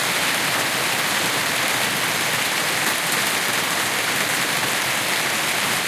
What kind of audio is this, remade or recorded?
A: recorded